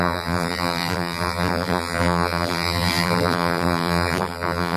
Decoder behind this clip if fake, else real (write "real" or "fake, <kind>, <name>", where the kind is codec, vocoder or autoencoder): fake, vocoder, BigVGAN v2